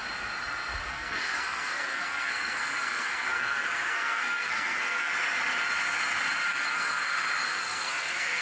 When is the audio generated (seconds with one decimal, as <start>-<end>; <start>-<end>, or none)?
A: 0.9-5.1; 6.5-7.1; 7.5-8.4